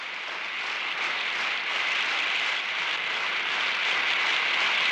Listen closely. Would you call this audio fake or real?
real